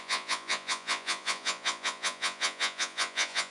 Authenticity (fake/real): fake